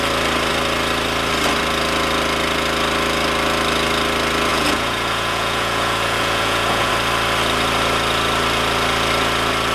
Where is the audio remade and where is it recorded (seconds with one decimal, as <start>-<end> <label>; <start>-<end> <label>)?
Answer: 0.0-4.5 recorded; 4.5-6.9 remade; 6.9-9.7 recorded